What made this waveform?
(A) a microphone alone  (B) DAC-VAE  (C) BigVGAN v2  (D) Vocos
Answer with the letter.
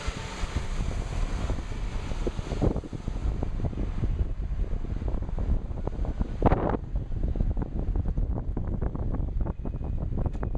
A